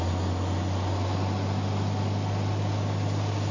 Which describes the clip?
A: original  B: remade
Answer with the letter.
A